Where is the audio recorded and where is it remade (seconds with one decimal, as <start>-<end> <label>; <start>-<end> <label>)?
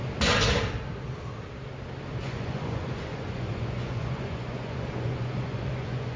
0.0-2.2 recorded; 2.2-6.2 remade